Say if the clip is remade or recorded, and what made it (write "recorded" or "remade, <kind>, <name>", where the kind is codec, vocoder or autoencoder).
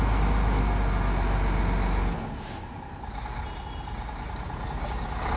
recorded